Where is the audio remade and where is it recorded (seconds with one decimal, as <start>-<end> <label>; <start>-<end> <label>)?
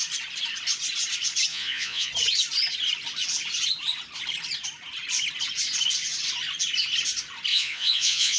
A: 0.0-1.5 recorded; 1.5-2.1 remade; 2.1-7.5 recorded; 7.5-8.4 remade